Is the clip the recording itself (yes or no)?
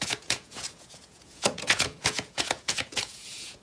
no